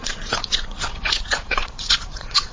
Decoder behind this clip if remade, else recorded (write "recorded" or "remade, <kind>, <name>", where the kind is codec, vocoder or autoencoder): remade, vocoder, Vocos